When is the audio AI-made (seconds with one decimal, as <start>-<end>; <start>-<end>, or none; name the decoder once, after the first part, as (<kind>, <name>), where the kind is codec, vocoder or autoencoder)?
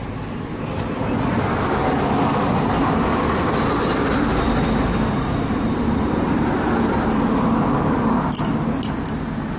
0.0-0.7 (vocoder, BigVGAN v2); 5.2-6.7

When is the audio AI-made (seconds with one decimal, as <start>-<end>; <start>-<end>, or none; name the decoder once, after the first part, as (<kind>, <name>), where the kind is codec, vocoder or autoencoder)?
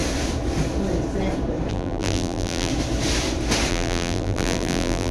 1.7-2.7 (vocoder, BigVGAN v2); 3.7-5.1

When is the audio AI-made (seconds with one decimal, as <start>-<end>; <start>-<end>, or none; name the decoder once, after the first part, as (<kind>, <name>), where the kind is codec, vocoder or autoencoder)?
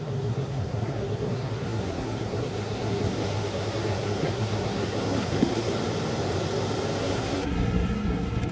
0.0-5.7 (codec, SNAC); 7.0-8.5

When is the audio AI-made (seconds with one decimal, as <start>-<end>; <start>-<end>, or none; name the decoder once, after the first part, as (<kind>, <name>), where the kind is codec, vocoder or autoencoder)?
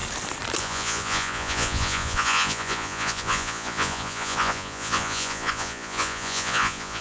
0.6-7.0 (vocoder, Vocos)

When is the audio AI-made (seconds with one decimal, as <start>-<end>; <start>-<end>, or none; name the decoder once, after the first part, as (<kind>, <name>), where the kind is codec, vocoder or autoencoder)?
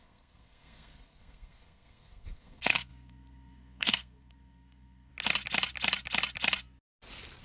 0.0-5.1 (codec, SNAC)